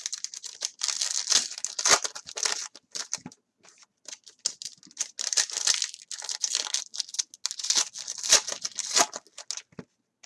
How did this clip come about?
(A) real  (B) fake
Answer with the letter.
A